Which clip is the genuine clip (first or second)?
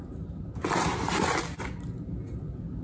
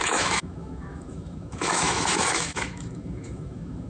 first